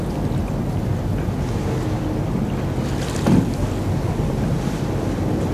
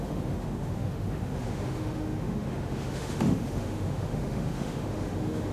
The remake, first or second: second